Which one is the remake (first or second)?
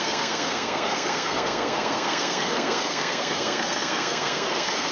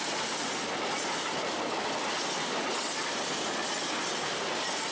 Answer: first